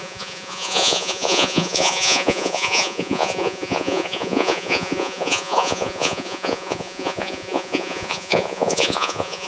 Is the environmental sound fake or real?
fake